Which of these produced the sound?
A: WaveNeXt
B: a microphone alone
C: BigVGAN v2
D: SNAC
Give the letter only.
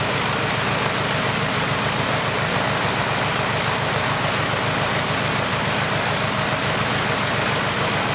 B